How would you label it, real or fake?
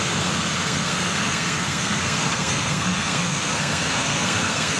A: fake